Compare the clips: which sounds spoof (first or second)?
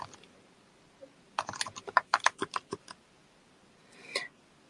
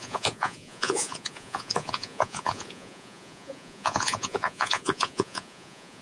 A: second